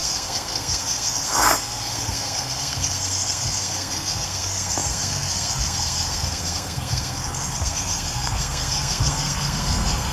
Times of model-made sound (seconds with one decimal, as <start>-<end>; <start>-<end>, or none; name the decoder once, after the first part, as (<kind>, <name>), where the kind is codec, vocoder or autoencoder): 0.0-10.1 (codec, SNAC)